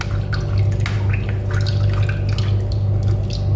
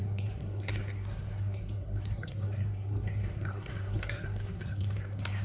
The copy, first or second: second